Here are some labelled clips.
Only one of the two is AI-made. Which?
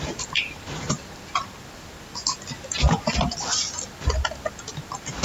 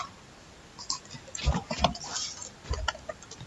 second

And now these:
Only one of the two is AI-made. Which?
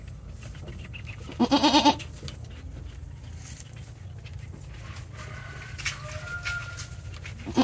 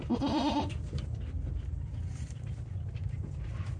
second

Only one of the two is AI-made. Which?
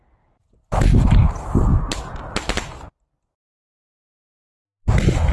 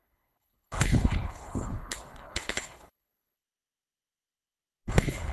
second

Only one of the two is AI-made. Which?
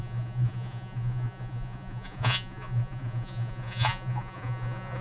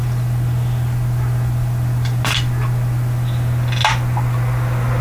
first